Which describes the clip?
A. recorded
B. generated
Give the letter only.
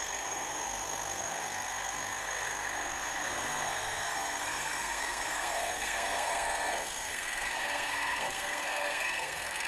B